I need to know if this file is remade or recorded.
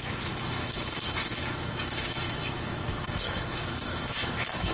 remade